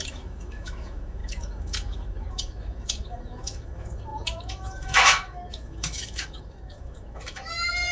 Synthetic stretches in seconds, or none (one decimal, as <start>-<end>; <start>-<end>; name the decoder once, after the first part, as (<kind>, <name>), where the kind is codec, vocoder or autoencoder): 0.0-7.9 (autoencoder, DAC-VAE)

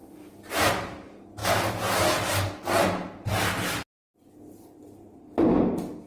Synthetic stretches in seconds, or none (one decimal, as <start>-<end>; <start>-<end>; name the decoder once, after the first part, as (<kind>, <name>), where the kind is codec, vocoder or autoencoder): none

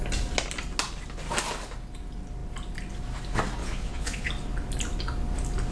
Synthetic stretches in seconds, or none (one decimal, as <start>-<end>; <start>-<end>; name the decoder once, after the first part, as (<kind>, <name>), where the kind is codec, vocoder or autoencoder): 3.6-4.3 (vocoder, Vocos)

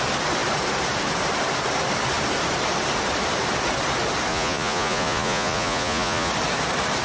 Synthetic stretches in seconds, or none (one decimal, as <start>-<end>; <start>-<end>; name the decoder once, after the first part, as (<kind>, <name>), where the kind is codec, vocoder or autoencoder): 4.3-6.3 (vocoder, Vocos)

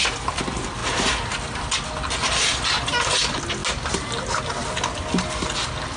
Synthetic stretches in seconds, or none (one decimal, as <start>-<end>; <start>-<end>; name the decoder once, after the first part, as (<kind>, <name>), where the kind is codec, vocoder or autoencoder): none